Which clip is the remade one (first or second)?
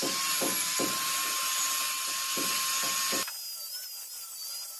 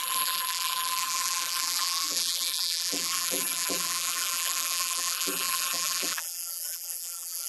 second